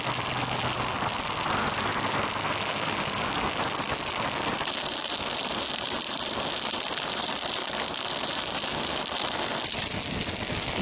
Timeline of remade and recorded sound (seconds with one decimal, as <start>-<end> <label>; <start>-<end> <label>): 0.0-10.8 recorded